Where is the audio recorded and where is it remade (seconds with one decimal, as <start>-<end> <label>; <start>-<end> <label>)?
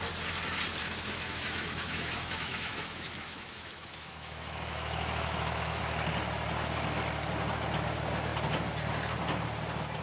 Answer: 0.0-0.8 recorded; 0.8-5.8 remade; 5.8-10.0 recorded